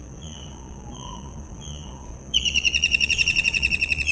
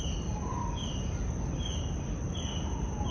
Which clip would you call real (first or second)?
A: second